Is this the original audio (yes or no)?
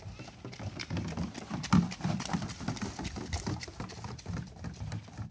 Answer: no